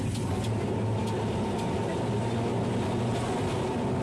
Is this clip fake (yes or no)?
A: no